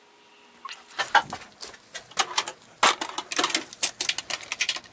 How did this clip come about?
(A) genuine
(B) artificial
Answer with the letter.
A